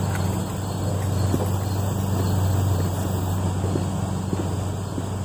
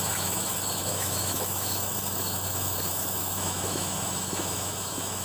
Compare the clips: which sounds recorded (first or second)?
first